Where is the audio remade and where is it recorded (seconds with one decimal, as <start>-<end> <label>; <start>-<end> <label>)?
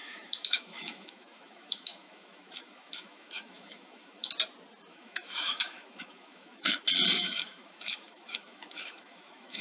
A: 0.0-4.3 remade; 4.3-4.9 recorded; 4.9-6.8 remade; 6.8-7.2 recorded; 7.2-9.6 remade